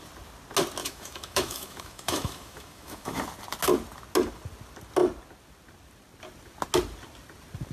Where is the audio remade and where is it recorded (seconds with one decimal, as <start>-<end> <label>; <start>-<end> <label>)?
0.0-0.8 recorded; 0.8-3.2 remade; 3.2-7.7 recorded